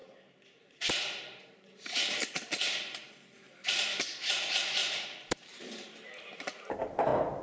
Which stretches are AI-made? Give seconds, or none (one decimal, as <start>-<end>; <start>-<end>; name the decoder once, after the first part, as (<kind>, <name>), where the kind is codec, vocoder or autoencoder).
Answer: 0.0-2.0 (vocoder, BigVGAN v2); 4.8-6.8